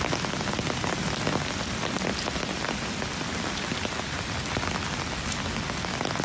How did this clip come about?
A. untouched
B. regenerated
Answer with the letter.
A